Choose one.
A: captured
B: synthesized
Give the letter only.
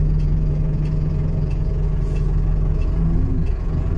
B